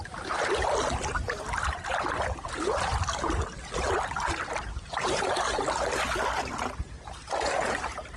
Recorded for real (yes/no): yes